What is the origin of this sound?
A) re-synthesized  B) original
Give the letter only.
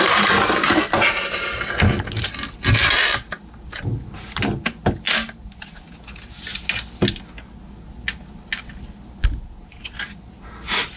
B